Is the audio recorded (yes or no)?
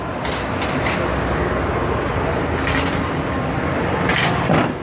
yes